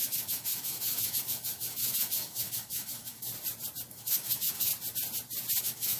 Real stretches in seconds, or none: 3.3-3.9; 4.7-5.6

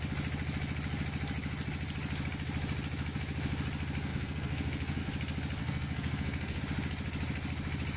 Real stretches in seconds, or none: 0.0-4.1; 5.0-5.6; 6.6-8.0

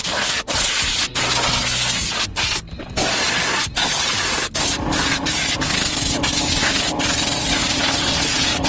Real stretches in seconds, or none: 0.0-7.6

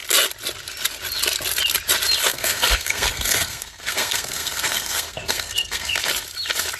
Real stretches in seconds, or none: 0.0-2.2; 6.1-6.8

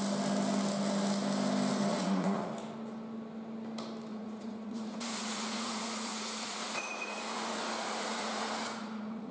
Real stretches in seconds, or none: 0.0-1.9; 2.5-4.1

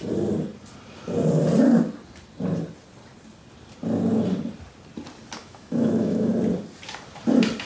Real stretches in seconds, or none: 0.0-5.4; 6.3-7.7